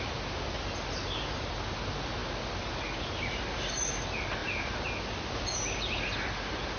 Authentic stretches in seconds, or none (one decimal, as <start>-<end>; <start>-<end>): 0.0-6.8